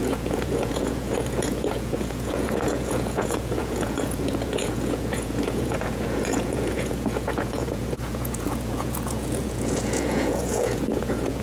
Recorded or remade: remade